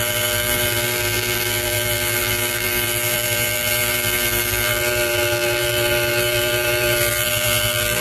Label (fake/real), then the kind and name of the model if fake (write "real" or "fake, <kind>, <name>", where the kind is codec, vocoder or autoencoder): fake, vocoder, BigVGAN v2